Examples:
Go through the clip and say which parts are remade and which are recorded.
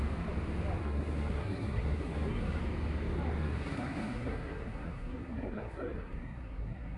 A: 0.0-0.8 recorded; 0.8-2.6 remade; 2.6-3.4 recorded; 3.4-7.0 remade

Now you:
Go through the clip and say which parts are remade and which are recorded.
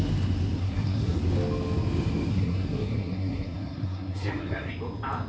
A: 0.0-0.6 recorded; 0.6-1.2 remade; 1.2-2.3 recorded; 2.3-4.7 remade; 4.7-5.3 recorded